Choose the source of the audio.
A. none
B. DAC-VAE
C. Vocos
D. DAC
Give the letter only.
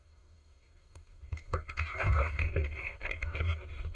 D